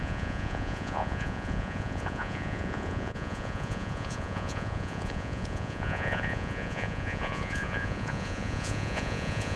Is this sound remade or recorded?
remade